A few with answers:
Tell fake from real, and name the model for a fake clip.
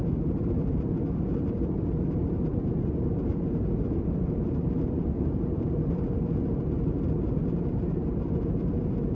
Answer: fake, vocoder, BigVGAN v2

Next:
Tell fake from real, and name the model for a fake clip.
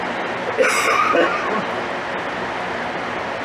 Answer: real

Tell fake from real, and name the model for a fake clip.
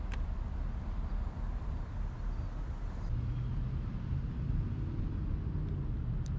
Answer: real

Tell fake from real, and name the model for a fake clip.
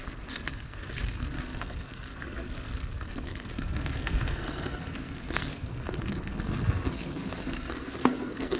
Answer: fake, codec, SNAC